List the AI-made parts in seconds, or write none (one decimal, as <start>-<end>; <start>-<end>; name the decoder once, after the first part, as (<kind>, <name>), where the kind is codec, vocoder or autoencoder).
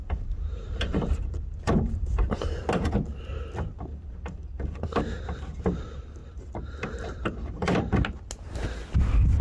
0.0-2.6 (vocoder, BigVGAN v2); 3.9-5.0; 6.2-7.8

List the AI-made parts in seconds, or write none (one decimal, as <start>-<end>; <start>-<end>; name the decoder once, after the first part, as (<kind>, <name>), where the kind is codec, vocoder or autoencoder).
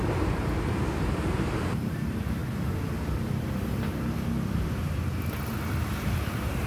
0.0-2.4 (vocoder, BigVGAN v2); 5.9-6.7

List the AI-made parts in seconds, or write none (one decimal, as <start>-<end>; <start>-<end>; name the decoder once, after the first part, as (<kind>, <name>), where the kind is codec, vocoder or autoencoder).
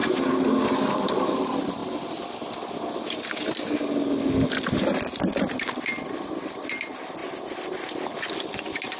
0.8-1.8 (vocoder, BigVGAN v2); 4.6-7.2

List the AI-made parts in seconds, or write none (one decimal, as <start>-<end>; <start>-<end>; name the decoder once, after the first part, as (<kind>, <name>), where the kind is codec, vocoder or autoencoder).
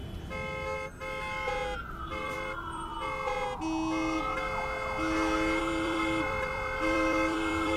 2.2-2.9 (vocoder, BigVGAN v2); 5.6-7.8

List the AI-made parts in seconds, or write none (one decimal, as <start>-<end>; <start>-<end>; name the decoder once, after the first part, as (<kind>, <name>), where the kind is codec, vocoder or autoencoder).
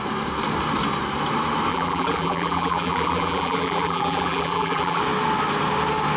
1.7-5.0 (vocoder, BigVGAN v2)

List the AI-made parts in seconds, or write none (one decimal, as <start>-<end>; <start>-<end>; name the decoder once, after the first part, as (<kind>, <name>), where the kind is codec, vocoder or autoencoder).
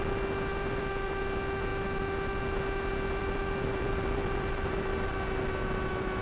0.5-1.2 (vocoder, BigVGAN v2); 3.2-5.1